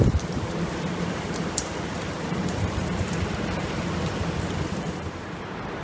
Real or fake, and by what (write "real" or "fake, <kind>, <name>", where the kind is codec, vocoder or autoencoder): fake, vocoder, BigVGAN v2